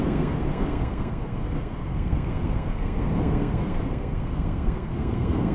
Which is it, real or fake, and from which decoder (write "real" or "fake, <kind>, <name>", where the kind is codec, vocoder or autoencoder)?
fake, codec, SNAC